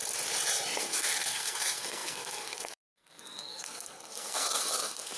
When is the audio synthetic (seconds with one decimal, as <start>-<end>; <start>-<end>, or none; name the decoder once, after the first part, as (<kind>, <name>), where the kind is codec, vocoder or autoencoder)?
0.8-5.2 (codec, SNAC)